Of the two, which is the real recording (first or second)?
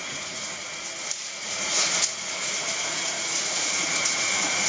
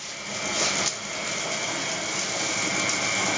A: second